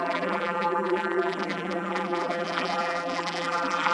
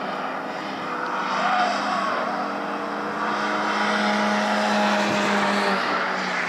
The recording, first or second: second